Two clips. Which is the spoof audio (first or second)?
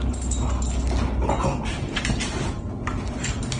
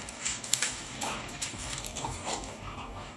second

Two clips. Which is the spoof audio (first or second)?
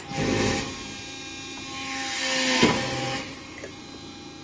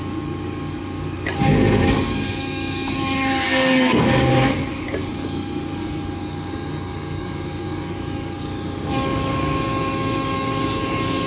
second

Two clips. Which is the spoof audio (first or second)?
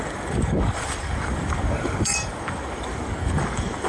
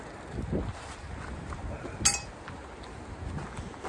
first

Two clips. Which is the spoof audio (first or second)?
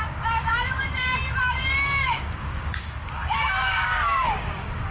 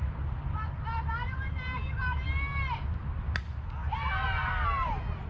first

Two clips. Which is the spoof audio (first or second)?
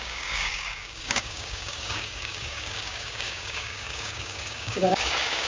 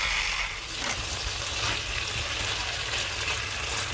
first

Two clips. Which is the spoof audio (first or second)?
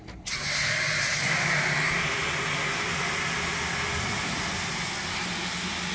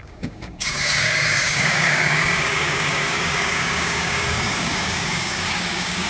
second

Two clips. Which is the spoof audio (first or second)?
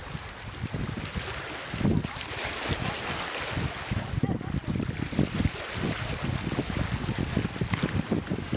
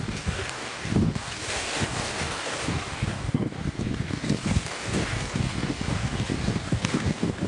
second